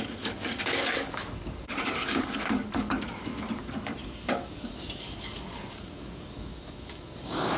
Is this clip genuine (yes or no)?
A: no